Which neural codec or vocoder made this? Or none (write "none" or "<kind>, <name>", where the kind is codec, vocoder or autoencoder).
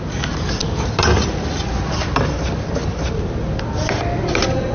none